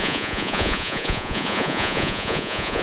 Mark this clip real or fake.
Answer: fake